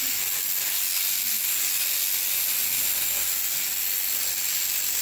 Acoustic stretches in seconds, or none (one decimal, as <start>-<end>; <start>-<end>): 0.0-5.0